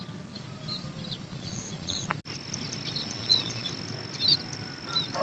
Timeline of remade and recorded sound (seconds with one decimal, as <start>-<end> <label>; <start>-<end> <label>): 0.0-1.3 recorded; 1.3-2.1 remade; 2.1-3.0 recorded; 3.0-3.7 remade; 3.7-5.2 recorded